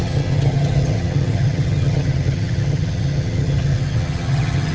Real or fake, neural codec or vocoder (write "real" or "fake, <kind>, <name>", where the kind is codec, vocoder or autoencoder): fake, vocoder, HiFi-GAN